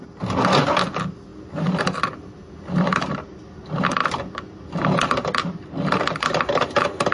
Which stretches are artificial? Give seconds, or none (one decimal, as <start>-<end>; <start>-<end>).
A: none